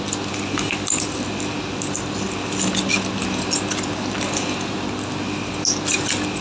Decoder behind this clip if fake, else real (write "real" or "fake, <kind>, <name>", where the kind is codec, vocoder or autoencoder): real